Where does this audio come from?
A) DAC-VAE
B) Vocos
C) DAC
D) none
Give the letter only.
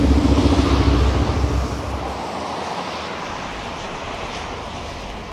D